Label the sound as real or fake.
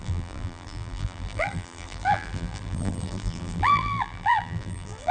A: fake